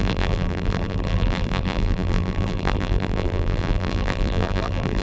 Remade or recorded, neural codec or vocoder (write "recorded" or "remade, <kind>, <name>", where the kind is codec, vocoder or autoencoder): remade, vocoder, BigVGAN v2